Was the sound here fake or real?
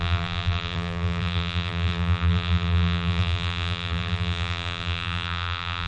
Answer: fake